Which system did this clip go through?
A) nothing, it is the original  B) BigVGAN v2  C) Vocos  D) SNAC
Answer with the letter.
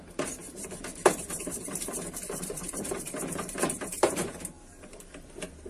B